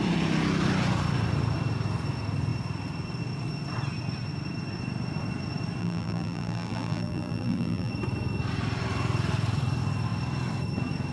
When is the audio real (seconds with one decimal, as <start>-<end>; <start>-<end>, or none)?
0.0-5.8; 7.9-11.1